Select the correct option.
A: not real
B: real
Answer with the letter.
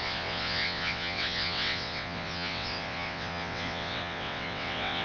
A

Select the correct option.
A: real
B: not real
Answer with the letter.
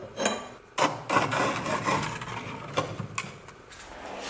A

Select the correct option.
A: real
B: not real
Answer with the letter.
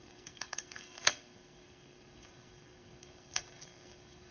B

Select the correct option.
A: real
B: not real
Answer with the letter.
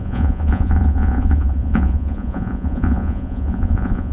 B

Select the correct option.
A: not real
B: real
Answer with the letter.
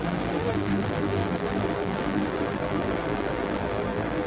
A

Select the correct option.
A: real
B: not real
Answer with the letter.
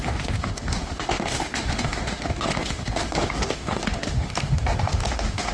B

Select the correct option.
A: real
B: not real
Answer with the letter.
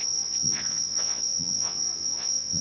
B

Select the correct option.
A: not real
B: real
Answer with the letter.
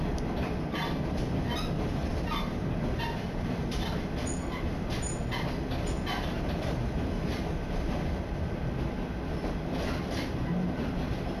B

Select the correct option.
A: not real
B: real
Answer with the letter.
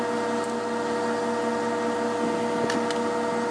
B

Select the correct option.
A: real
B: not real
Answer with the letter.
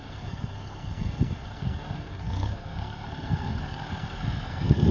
B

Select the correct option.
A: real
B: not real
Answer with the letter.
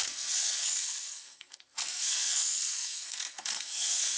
B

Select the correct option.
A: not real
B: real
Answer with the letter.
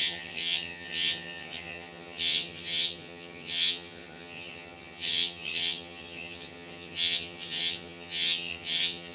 A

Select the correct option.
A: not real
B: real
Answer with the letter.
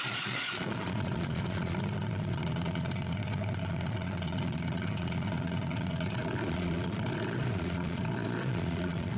A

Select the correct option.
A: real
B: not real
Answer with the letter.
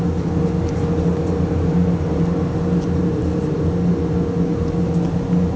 A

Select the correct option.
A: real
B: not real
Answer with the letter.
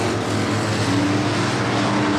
A